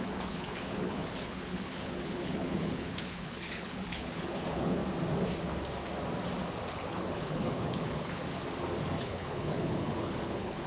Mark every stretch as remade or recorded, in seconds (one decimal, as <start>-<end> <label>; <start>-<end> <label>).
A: 0.0-4.8 remade; 4.8-6.7 recorded; 6.7-8.2 remade; 8.2-9.0 recorded; 9.0-10.7 remade